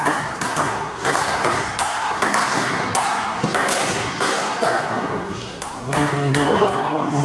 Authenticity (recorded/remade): remade